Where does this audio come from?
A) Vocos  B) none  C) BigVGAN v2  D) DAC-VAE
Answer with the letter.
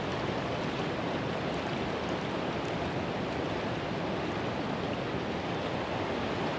B